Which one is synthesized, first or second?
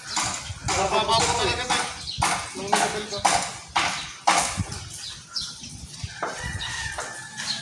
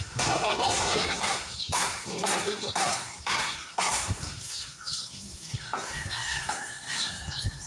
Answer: second